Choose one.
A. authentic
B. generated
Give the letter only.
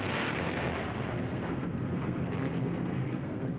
B